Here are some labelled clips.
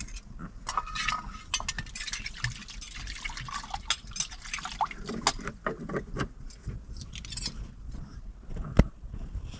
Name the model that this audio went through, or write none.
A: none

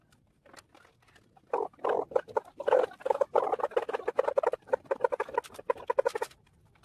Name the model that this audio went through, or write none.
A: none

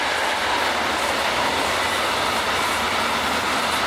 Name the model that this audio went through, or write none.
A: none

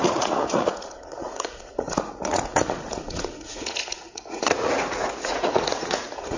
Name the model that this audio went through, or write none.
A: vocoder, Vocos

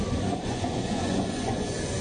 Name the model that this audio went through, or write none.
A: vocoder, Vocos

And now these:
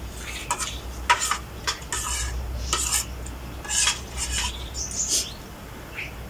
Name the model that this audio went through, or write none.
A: none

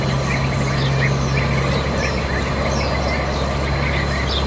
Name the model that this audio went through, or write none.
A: none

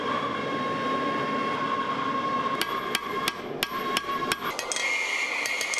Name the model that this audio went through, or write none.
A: none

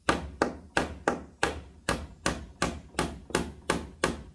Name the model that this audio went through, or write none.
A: none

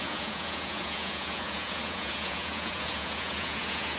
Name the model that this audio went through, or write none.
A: vocoder, Vocos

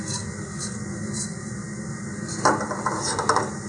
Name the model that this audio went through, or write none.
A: none